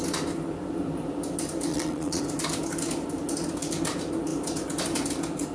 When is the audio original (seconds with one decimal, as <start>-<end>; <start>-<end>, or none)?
0.0-1.7; 2.2-5.5